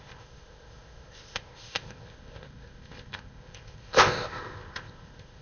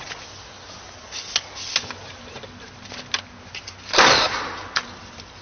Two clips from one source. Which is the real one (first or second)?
second